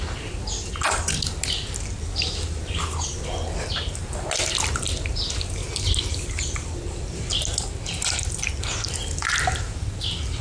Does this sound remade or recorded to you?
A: recorded